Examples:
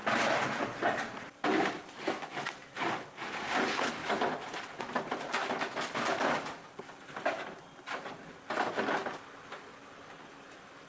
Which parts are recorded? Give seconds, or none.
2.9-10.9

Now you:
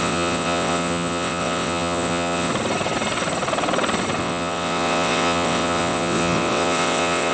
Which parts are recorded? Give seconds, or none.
2.5-4.2

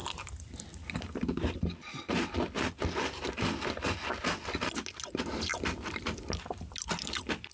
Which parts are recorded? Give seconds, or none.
0.0-7.5

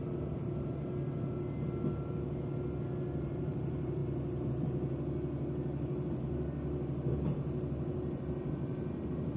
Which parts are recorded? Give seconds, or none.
0.0-3.4; 4.0-9.4

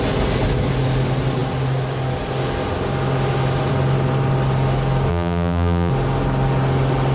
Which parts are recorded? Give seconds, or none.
0.0-5.1; 5.9-7.1

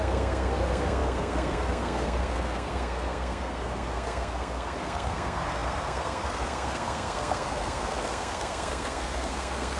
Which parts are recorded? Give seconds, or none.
none

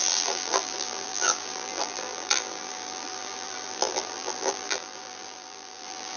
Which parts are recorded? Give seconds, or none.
none

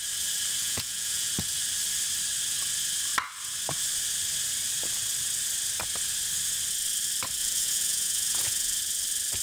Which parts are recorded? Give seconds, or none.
0.0-0.6; 1.3-7.4; 8.8-9.4